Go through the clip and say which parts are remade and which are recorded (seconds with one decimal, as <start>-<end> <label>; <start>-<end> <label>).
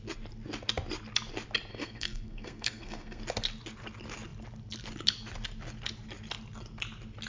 0.0-1.7 recorded; 1.7-3.2 remade; 3.2-7.3 recorded